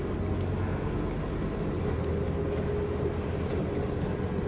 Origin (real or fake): real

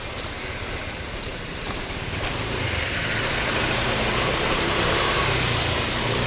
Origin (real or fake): fake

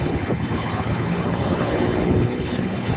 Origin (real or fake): fake